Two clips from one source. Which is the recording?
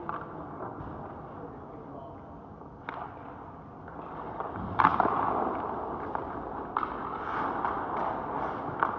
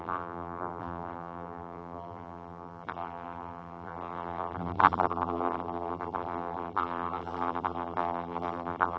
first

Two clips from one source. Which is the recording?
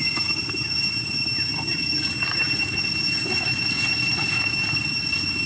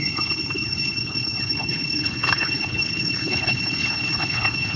first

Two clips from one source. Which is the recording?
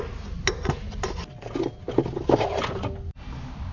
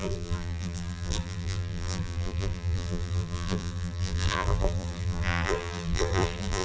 first